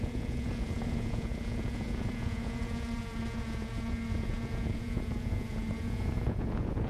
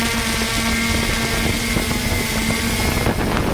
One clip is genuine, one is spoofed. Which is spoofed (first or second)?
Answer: first